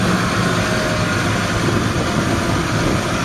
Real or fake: real